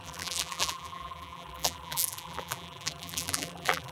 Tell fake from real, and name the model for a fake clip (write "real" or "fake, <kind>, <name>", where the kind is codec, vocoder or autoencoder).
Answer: fake, vocoder, BigVGAN v2